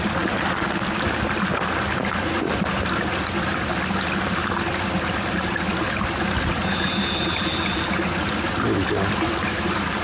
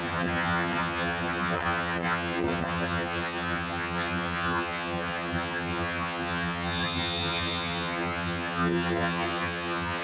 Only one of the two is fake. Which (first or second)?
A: second